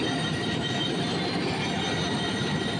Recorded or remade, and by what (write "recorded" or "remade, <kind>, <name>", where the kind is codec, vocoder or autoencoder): remade, vocoder, BigVGAN v2